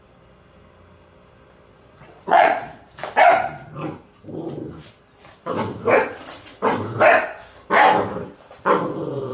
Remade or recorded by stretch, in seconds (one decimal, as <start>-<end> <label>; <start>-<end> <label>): 0.0-1.7 recorded; 1.7-2.8 remade; 2.8-9.3 recorded